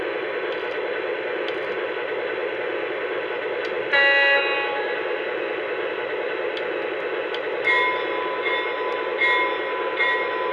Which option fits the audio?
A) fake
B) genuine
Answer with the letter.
B